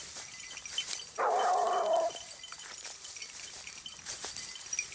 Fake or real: fake